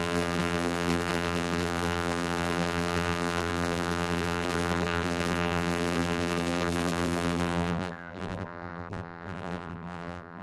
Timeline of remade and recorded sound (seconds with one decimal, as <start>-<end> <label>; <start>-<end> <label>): 0.0-10.4 remade